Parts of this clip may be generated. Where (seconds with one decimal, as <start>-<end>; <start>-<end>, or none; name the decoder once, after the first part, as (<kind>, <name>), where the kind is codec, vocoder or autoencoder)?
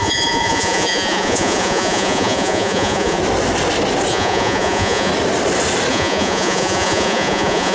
0.0-3.2 (vocoder, Vocos); 4.1-5.1; 5.9-7.7